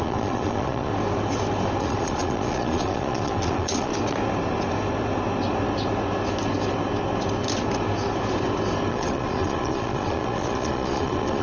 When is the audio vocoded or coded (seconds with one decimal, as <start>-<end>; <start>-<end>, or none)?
0.0-0.9; 1.8-3.9; 8.9-11.4